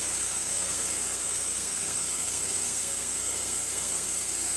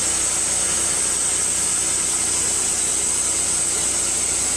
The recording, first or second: second